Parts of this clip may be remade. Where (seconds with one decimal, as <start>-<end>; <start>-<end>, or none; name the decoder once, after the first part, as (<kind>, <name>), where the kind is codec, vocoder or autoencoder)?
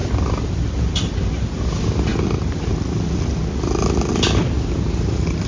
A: none